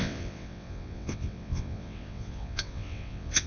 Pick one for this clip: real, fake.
fake